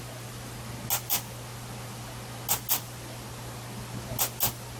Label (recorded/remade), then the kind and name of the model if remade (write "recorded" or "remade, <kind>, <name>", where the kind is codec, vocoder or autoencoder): recorded